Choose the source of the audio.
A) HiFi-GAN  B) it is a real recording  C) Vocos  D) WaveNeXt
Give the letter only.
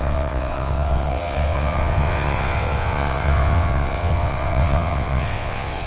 D